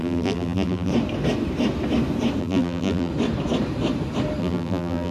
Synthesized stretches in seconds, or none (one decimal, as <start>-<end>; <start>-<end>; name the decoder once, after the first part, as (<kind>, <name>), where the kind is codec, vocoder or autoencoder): 0.0-0.9 (vocoder, BigVGAN v2); 2.4-3.1; 4.4-5.1